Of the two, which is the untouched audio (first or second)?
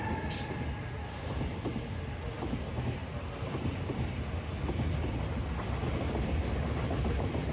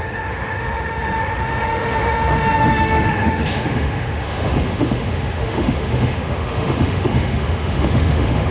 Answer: first